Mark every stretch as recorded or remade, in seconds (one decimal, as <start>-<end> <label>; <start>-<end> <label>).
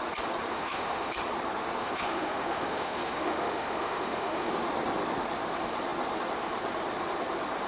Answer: 0.0-0.5 recorded; 0.5-1.1 remade; 1.1-1.8 recorded; 1.8-4.5 remade; 4.5-7.7 recorded